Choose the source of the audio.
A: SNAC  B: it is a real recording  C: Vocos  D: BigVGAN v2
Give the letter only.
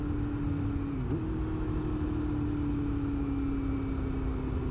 B